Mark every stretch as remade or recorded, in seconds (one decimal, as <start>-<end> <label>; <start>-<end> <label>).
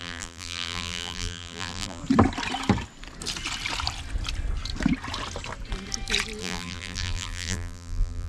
0.0-2.0 remade; 2.0-6.4 recorded; 6.4-8.3 remade